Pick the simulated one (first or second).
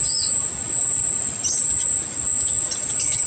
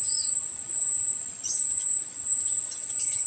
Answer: second